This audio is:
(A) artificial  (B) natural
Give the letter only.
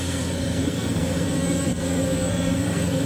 A